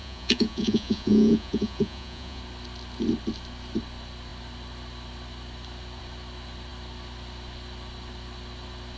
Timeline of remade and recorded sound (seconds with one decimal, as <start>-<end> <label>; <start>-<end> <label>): 0.0-2.4 remade; 2.4-9.0 recorded